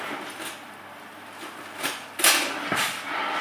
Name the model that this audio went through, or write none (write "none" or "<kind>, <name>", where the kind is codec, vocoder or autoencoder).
none